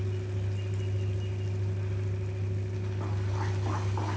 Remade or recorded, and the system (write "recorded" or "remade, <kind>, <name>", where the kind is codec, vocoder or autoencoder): recorded